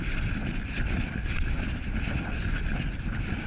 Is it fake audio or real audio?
real